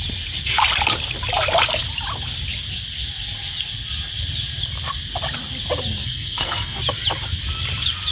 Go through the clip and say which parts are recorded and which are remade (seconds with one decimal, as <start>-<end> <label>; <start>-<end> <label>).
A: 0.0-6.0 recorded; 6.0-6.8 remade; 6.8-8.1 recorded